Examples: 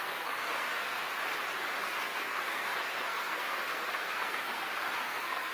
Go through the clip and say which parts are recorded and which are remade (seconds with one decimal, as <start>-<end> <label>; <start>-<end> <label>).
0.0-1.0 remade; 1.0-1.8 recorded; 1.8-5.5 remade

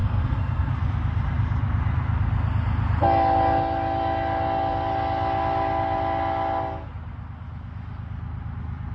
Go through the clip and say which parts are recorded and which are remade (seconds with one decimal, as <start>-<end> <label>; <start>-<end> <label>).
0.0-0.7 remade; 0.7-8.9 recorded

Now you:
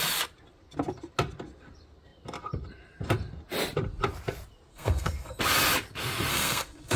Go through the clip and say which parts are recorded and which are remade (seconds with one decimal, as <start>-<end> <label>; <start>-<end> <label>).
0.0-4.7 recorded; 4.7-5.4 remade; 5.4-6.3 recorded; 6.3-7.0 remade

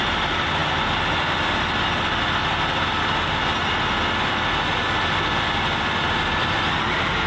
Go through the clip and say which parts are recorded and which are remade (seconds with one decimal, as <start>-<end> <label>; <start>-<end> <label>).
0.0-7.3 recorded

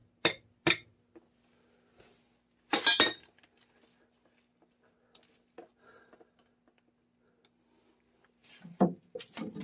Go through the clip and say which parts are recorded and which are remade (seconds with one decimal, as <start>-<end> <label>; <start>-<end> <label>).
0.0-9.6 recorded

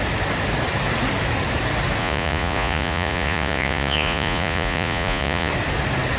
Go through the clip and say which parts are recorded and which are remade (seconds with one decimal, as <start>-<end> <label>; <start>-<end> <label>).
0.0-2.0 recorded; 2.0-5.5 remade; 5.5-6.2 recorded

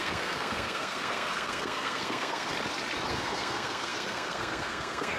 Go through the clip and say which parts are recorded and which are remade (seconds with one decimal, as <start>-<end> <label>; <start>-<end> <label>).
0.0-2.5 remade; 2.5-3.1 recorded; 3.1-5.2 remade